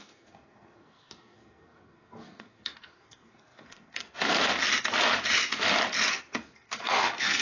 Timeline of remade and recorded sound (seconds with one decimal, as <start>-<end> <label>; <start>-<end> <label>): 0.0-4.5 remade; 4.5-6.1 recorded; 6.1-7.4 remade